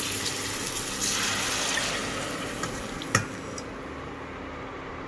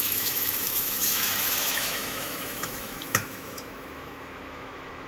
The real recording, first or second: first